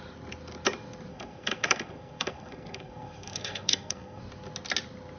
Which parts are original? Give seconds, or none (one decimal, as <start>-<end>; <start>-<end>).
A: 0.0-1.1; 4.2-5.2